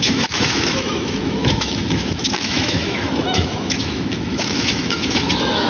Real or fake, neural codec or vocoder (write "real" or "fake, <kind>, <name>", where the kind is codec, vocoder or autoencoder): fake, autoencoder, DAC-VAE